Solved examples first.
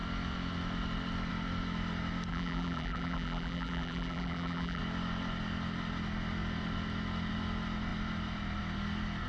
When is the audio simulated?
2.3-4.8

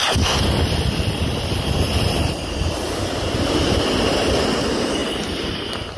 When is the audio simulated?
none

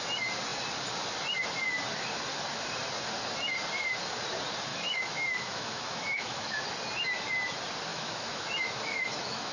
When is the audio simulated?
4.7-6.6; 7.9-9.5